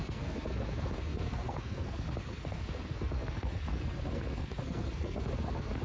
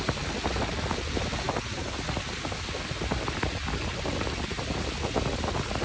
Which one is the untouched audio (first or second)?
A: second